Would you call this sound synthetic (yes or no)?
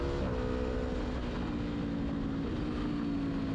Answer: no